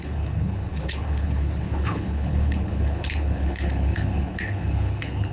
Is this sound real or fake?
fake